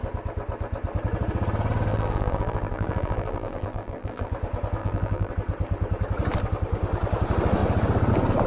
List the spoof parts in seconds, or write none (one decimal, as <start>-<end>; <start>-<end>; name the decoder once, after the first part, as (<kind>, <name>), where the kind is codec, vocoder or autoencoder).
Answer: 1.9-4.3 (vocoder, BigVGAN v2); 4.8-5.3